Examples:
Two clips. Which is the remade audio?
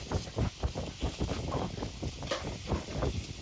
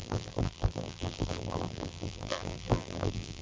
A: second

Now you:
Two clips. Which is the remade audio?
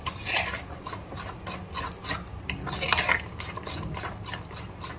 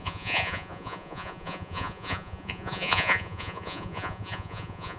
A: second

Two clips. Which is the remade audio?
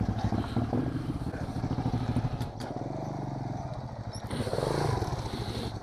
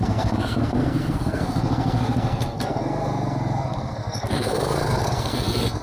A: second